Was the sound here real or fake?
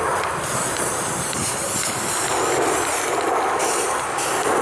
real